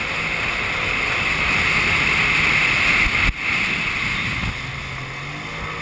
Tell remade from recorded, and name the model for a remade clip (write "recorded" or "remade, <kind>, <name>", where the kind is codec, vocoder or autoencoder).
recorded